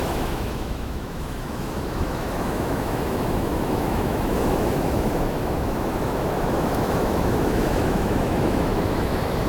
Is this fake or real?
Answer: fake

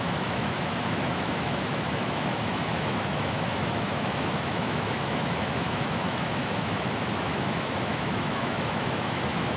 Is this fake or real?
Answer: fake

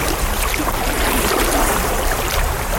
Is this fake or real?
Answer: real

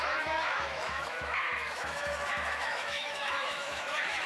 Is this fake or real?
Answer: fake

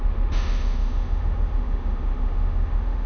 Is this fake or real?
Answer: fake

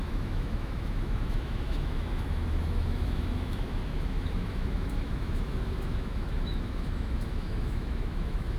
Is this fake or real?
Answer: fake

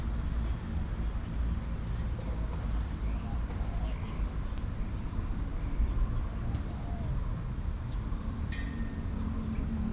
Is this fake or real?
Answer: real